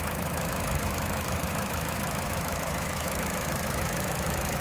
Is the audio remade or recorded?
remade